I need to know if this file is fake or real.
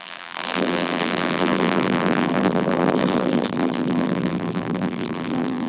fake